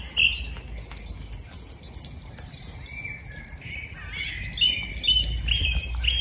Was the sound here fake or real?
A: real